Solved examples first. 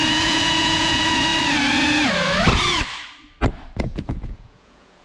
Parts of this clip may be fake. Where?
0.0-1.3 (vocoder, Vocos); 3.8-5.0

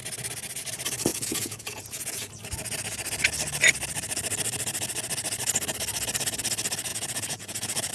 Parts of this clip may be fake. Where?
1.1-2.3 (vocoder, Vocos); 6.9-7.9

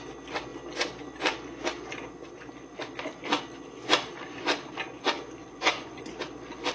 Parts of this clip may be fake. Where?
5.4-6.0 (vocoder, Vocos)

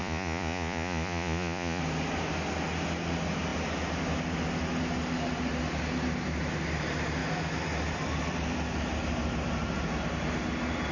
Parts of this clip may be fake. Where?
0.0-1.8 (vocoder, Vocos)

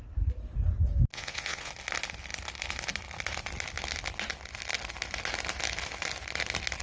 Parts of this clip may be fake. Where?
1.1-1.7 (vocoder, Vocos)

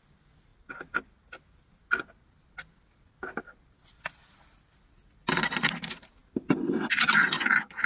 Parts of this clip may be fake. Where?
none

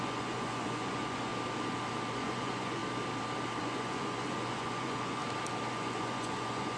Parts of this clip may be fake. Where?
0.0-1.3 (vocoder, Vocos); 2.1-2.8; 3.6-5.2; 5.7-6.8

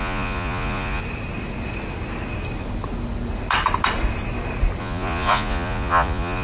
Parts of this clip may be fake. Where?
0.0-1.0 (vocoder, Vocos); 4.8-6.4